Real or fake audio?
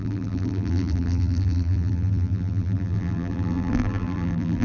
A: fake